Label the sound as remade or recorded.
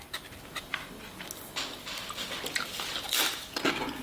recorded